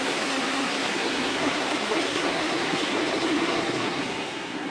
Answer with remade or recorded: remade